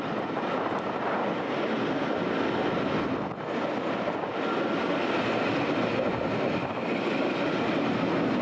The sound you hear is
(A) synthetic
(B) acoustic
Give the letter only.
B